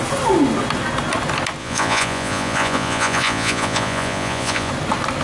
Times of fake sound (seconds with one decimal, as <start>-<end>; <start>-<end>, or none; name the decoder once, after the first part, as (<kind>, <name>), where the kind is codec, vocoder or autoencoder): 1.6-4.7 (vocoder, Vocos)